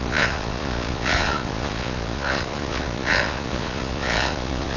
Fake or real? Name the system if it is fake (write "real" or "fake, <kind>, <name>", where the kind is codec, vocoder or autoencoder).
fake, vocoder, Vocos